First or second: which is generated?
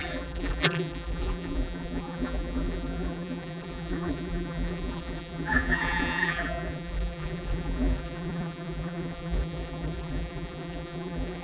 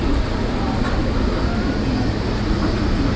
first